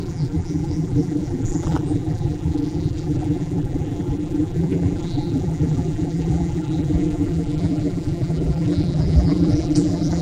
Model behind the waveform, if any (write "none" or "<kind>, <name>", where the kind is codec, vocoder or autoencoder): vocoder, BigVGAN v2